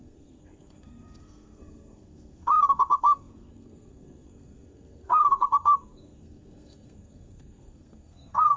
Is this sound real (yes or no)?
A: no